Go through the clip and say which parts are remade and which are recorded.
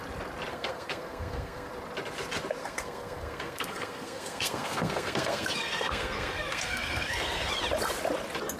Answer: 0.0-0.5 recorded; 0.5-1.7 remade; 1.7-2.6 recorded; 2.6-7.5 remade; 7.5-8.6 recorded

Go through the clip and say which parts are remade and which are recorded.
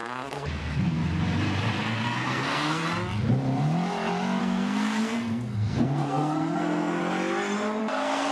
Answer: 0.0-1.0 remade; 1.0-1.8 recorded; 1.8-2.8 remade; 2.8-4.4 recorded; 4.4-7.0 remade; 7.0-7.8 recorded; 7.8-8.3 remade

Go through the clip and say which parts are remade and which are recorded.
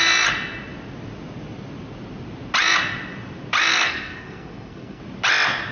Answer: 0.0-3.7 recorded; 3.7-5.0 remade; 5.0-5.7 recorded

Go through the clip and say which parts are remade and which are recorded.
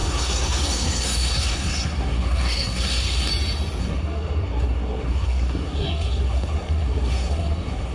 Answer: 0.0-3.3 remade; 3.3-3.8 recorded; 3.8-7.9 remade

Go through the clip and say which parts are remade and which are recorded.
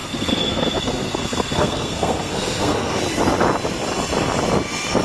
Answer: 0.0-3.0 remade; 3.0-5.0 recorded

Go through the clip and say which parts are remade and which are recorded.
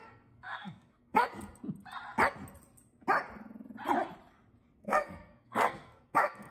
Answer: 0.0-1.3 remade; 1.3-4.8 recorded; 4.8-6.5 remade